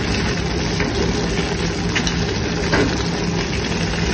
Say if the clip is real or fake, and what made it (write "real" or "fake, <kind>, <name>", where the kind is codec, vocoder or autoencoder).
real